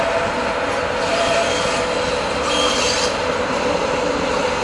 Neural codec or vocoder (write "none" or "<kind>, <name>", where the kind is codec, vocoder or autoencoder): none